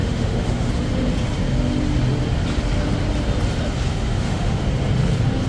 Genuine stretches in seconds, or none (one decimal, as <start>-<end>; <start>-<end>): 0.7-3.9; 4.7-5.5